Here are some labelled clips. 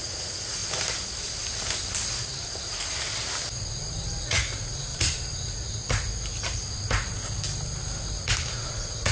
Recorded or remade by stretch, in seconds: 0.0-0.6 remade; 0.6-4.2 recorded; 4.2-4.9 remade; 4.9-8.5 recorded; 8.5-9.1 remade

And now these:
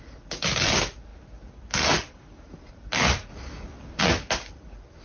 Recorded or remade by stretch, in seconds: 0.0-5.0 recorded

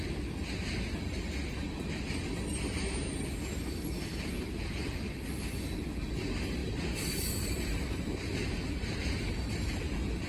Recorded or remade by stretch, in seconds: 0.0-4.8 recorded; 4.8-5.3 remade; 5.3-6.6 recorded; 6.6-9.7 remade; 9.7-10.3 recorded

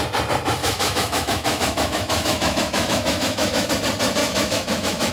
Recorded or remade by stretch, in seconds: 0.0-0.6 recorded; 0.6-3.7 remade; 3.7-4.2 recorded; 4.2-5.1 remade

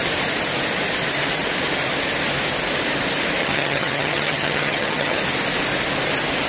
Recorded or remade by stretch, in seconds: 0.0-3.4 recorded; 3.4-5.2 remade; 5.2-6.5 recorded

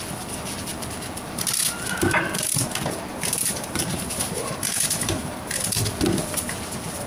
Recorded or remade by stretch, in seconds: 0.0-3.1 recorded; 3.1-5.8 remade; 5.8-7.1 recorded

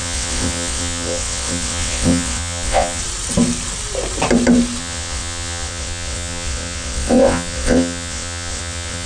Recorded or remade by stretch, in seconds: 0.0-3.0 remade; 3.0-4.8 recorded; 4.8-9.1 remade

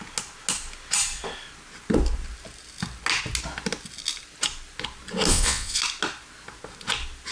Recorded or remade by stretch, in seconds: 0.0-5.3 recorded; 5.3-5.8 remade; 5.8-7.3 recorded